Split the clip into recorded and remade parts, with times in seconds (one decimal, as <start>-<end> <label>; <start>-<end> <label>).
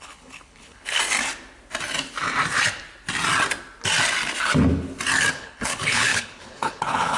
0.0-1.0 remade; 1.0-5.3 recorded; 5.3-7.2 remade